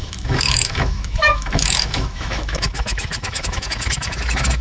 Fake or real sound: fake